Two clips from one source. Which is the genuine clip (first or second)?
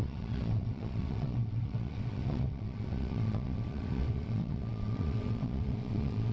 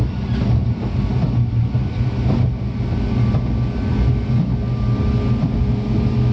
second